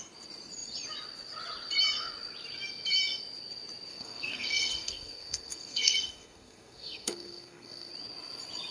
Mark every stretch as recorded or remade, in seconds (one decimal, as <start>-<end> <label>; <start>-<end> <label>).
0.0-3.9 recorded; 3.9-7.9 remade; 7.9-8.7 recorded